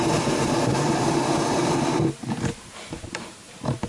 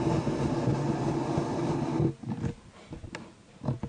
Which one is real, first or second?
second